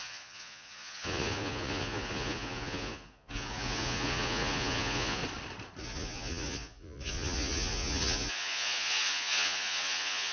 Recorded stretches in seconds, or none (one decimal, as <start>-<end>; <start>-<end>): 5.2-5.8